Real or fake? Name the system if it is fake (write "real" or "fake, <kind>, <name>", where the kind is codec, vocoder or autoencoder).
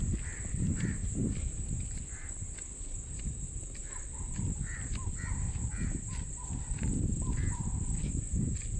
real